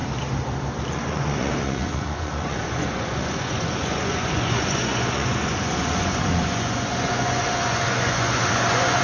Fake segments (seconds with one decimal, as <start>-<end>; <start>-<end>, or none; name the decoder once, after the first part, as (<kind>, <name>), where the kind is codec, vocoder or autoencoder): 0.9-9.0 (vocoder, Vocos)